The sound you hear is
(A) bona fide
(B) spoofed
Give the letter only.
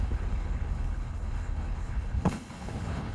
B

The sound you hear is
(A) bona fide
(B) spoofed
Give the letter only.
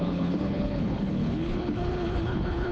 B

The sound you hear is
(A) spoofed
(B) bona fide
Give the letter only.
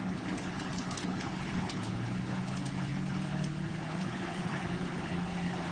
A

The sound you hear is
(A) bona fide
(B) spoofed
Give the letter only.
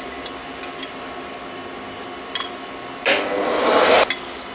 A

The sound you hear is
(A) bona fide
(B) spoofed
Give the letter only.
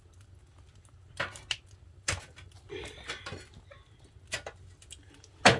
A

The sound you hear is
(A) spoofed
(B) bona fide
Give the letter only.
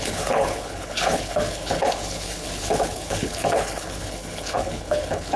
A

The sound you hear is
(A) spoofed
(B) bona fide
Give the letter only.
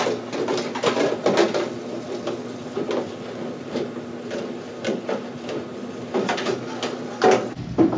B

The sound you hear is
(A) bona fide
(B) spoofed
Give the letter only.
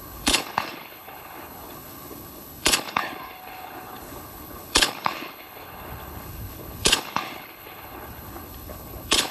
B